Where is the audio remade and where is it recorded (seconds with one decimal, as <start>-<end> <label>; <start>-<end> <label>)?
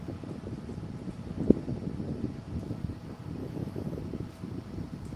0.0-3.4 recorded; 3.4-4.0 remade; 4.0-5.2 recorded